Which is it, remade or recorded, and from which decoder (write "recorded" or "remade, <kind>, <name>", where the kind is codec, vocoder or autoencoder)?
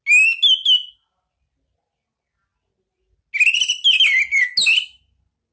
recorded